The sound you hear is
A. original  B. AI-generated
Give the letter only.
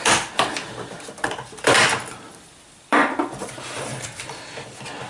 B